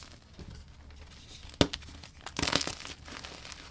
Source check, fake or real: real